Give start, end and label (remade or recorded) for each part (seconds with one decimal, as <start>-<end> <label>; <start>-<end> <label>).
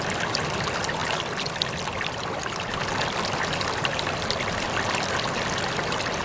0.0-1.0 recorded; 1.0-4.5 remade; 4.5-6.2 recorded